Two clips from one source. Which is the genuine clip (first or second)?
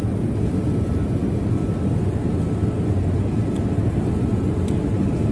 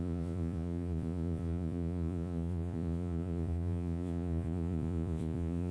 first